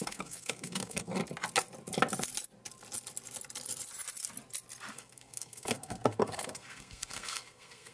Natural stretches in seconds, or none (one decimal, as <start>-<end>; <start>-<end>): 1.2-4.9